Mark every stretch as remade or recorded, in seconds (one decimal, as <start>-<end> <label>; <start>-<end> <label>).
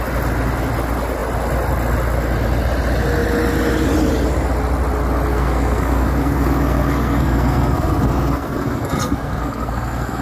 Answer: 0.0-5.3 recorded; 5.3-10.2 remade